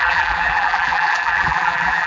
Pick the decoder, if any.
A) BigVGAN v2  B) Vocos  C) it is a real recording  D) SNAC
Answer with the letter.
A